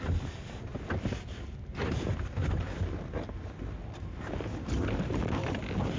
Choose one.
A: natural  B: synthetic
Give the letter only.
A